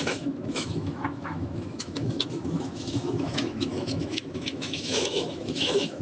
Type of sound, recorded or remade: remade